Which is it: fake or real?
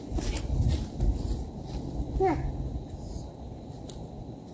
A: real